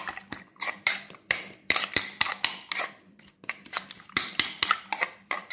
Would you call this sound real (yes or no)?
no